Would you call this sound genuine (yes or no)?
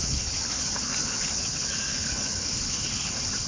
no